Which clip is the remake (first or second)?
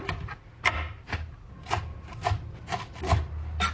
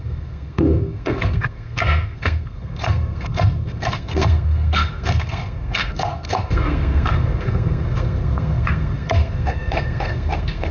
second